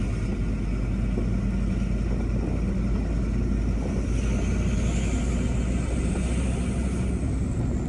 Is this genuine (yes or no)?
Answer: yes